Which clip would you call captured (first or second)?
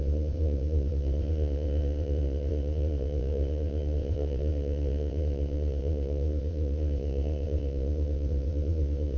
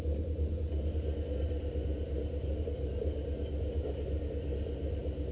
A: second